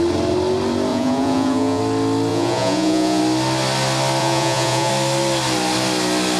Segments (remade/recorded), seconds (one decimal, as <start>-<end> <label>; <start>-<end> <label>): 0.0-0.9 recorded; 0.9-1.8 remade; 1.8-2.3 recorded; 2.3-3.2 remade; 3.2-4.2 recorded; 4.2-4.9 remade; 4.9-6.4 recorded